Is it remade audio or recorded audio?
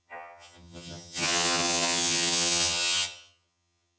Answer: remade